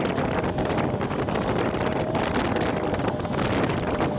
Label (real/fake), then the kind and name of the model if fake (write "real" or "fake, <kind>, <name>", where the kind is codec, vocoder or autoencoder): real